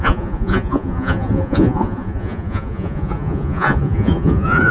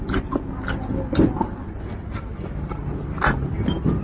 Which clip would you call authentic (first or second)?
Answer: second